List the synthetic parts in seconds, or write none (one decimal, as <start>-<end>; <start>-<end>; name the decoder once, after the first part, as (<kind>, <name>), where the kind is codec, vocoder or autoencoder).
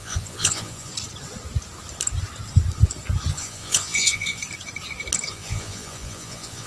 0.0-0.9 (vocoder, Vocos); 3.3-4.4; 5.3-6.7